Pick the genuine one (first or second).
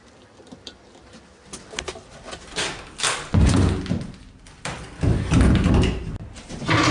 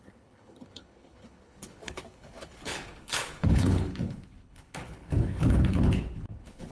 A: first